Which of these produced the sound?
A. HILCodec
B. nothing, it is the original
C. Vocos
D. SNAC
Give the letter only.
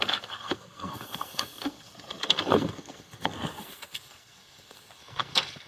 D